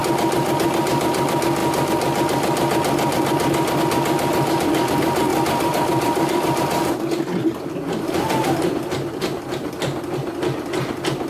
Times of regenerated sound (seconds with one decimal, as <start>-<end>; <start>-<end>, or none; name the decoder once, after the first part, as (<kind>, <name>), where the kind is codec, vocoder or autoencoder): 5.3-9.4 (vocoder, BigVGAN v2)